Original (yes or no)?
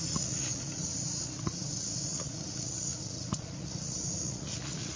no